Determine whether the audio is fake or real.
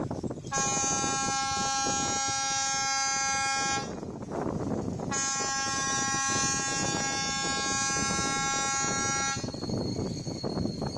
real